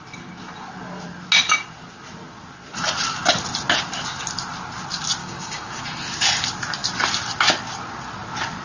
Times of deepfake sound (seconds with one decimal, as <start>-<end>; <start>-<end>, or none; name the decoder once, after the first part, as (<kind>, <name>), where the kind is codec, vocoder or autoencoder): 5.2-5.8 (codec, DAC)